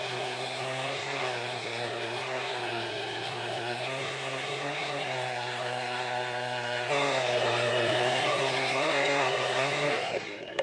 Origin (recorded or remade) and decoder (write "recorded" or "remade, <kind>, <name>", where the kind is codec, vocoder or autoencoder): remade, codec, SNAC